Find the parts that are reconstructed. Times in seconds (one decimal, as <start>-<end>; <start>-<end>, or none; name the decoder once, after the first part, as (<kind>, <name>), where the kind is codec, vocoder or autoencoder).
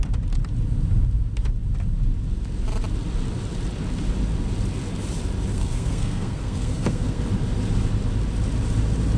5.5-7.2 (codec, SNAC)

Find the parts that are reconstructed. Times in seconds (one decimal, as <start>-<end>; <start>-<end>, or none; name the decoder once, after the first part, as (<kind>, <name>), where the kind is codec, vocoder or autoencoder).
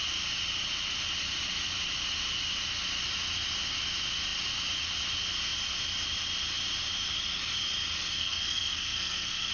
8.2-9.5 (codec, SNAC)